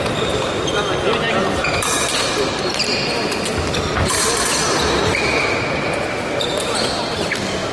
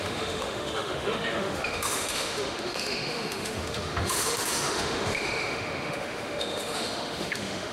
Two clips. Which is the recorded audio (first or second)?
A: first